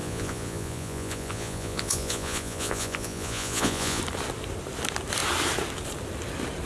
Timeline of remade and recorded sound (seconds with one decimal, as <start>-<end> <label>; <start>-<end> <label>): 0.0-4.0 remade; 4.0-6.7 recorded